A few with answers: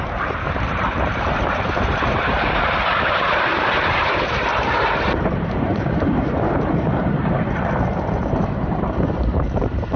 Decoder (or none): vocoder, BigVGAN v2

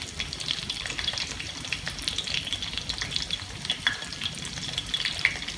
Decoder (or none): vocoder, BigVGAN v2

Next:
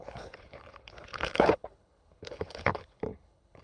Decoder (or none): codec, HILCodec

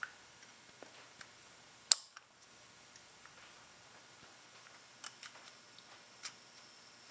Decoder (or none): none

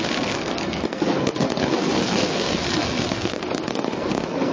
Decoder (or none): codec, SNAC